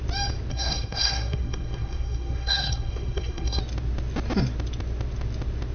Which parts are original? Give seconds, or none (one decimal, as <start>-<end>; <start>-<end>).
0.0-0.5; 3.6-5.7